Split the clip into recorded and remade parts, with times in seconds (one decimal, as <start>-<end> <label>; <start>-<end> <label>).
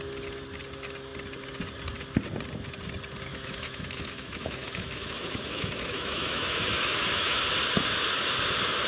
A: 0.0-3.3 recorded; 3.3-7.4 remade; 7.4-8.9 recorded